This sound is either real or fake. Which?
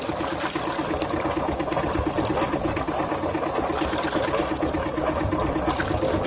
real